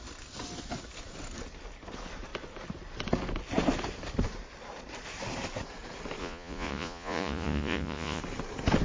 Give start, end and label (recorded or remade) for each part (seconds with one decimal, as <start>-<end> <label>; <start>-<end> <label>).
0.0-6.2 recorded; 6.2-8.2 remade; 8.2-8.8 recorded